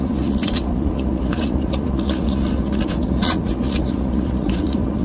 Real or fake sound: fake